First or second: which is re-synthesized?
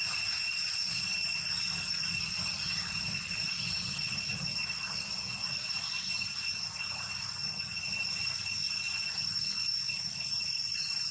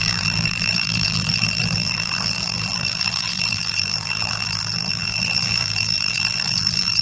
second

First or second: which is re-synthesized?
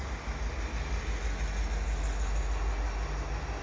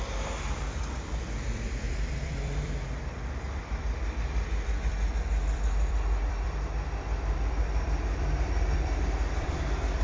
second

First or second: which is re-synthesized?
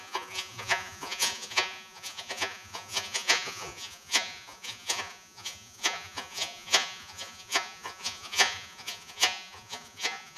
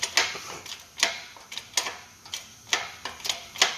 first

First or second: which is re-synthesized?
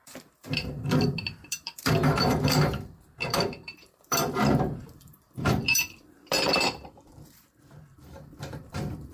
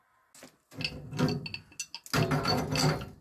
first